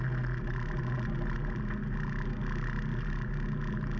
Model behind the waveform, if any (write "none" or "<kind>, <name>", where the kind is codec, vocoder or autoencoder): none